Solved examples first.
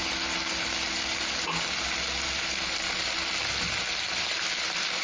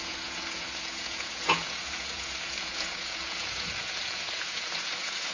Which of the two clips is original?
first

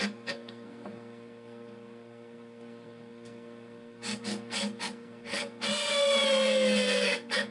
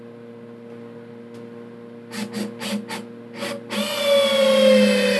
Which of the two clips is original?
second